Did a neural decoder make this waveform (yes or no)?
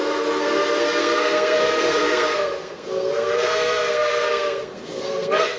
yes